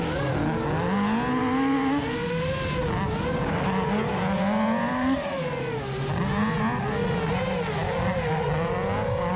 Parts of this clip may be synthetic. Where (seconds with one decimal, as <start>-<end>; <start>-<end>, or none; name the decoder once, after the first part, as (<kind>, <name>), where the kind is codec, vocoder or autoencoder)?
none